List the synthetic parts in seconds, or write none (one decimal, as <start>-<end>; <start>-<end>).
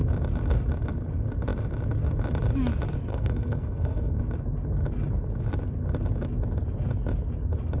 3.1-4.2